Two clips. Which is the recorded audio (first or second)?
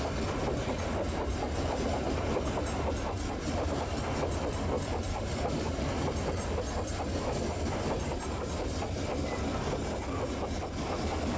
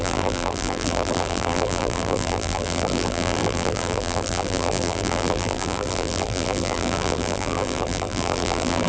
first